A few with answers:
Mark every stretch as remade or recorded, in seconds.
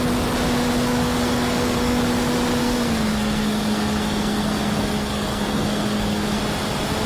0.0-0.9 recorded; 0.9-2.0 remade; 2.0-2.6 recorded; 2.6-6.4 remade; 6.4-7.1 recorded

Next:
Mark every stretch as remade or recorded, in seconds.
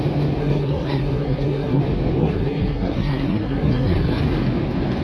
0.0-0.4 recorded; 0.4-1.8 remade; 1.8-2.2 recorded; 2.2-4.2 remade; 4.2-5.0 recorded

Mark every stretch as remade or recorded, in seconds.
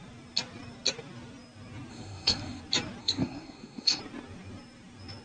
0.0-1.9 recorded; 1.9-2.6 remade; 2.6-3.0 recorded; 3.0-4.0 remade; 4.0-5.2 recorded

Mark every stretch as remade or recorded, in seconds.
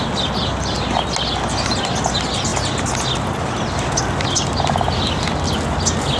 0.0-6.2 recorded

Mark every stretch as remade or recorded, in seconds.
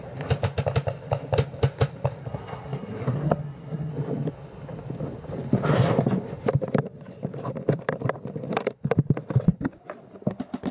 0.0-2.2 recorded; 2.2-3.9 remade; 3.9-10.7 recorded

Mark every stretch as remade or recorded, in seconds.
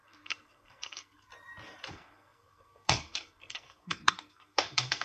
0.0-1.3 remade; 1.3-1.9 recorded; 1.9-5.0 remade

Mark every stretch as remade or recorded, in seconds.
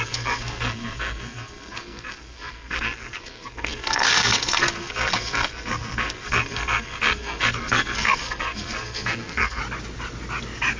0.0-9.6 remade; 9.6-10.8 recorded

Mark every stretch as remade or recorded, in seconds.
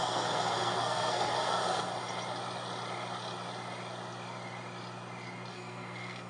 0.0-1.9 remade; 1.9-5.5 recorded; 5.5-6.3 remade